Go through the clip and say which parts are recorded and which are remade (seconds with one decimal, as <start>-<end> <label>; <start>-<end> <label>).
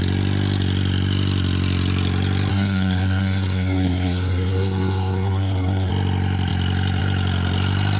0.0-2.5 recorded; 2.5-5.9 remade; 5.9-8.0 recorded